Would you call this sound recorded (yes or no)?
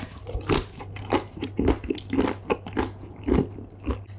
yes